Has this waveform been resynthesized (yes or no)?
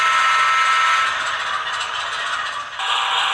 no